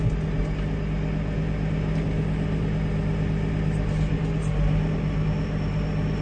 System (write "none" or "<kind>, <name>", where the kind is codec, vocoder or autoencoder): none